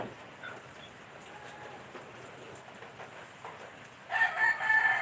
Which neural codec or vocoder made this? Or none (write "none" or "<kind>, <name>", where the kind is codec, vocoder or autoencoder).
none